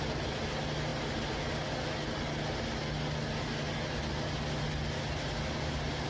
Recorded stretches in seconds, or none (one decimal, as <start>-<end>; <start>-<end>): 0.0-6.1